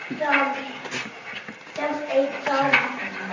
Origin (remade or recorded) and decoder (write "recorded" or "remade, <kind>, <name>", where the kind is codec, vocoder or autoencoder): recorded